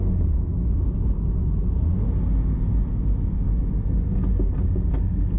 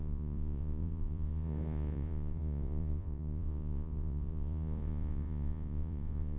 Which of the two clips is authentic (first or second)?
first